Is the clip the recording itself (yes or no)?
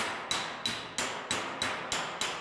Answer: yes